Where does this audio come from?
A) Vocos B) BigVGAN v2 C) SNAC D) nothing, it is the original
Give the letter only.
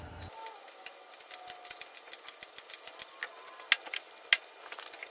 D